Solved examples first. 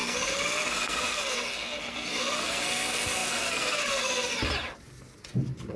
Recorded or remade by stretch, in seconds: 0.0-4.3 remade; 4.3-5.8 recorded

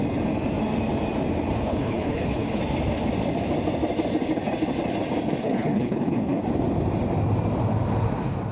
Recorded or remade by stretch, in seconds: 0.0-1.7 recorded; 1.7-2.6 remade; 2.6-5.4 recorded; 5.4-6.4 remade; 6.4-8.5 recorded

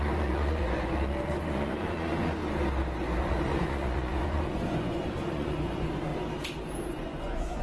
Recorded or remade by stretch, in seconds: 0.0-2.4 remade; 2.4-3.2 recorded; 3.2-6.1 remade; 6.1-6.9 recorded; 6.9-7.6 remade

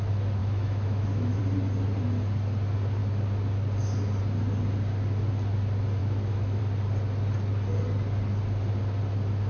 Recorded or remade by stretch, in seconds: 0.0-0.4 recorded; 0.4-1.4 remade; 1.4-6.0 recorded; 6.0-6.6 remade; 6.6-9.5 recorded